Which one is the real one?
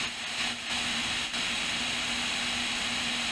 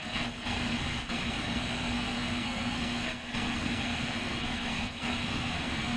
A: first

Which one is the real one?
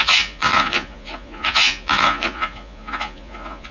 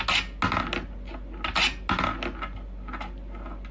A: second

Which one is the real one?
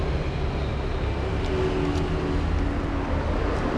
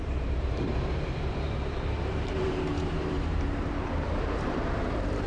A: first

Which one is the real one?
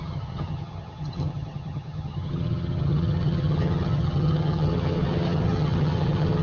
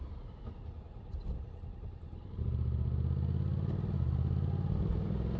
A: second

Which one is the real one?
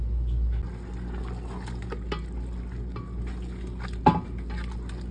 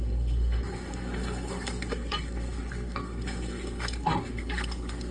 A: first